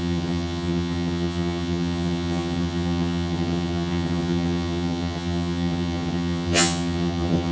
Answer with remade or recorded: remade